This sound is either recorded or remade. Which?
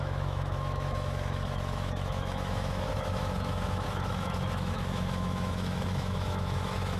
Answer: remade